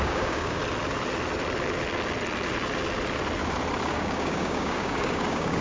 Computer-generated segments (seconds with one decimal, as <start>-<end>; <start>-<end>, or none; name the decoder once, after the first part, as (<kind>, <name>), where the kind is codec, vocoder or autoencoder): 0.0-0.6 (codec, DAC); 3.9-5.6